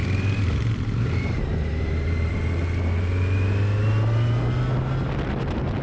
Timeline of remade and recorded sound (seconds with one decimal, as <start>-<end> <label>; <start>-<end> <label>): 0.0-2.3 remade; 2.3-5.8 recorded